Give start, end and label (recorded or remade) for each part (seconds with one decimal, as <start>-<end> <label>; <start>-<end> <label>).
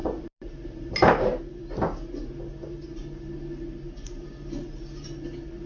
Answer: 0.0-0.9 remade; 0.9-5.7 recorded